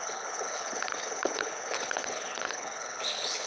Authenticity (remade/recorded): remade